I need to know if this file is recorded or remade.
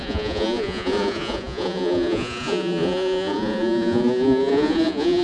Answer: remade